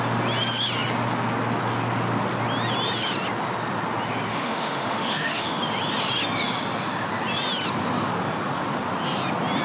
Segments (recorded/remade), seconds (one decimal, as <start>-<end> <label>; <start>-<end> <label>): 0.0-4.3 recorded; 4.3-5.6 remade; 5.6-9.6 recorded